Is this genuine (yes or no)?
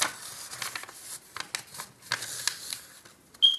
yes